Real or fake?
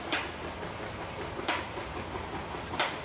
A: real